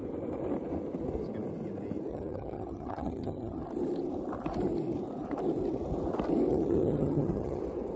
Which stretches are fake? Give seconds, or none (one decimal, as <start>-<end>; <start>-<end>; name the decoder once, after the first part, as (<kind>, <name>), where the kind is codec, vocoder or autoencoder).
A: 2.1-3.6 (vocoder, HiFi-GAN); 6.5-7.6